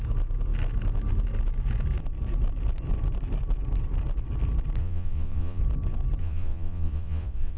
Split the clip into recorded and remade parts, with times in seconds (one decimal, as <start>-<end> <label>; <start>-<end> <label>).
0.0-4.8 recorded; 4.8-5.6 remade; 5.6-6.2 recorded; 6.2-7.6 remade